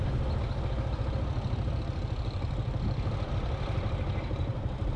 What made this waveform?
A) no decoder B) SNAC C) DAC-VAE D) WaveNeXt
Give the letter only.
A